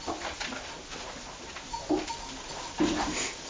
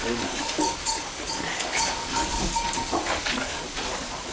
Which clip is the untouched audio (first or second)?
first